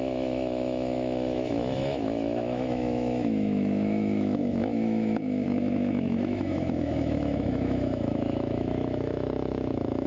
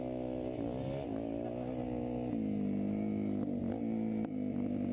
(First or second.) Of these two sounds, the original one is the second